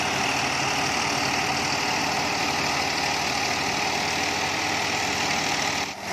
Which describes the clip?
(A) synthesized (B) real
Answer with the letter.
A